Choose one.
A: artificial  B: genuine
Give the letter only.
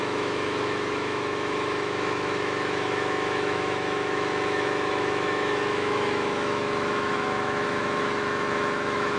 A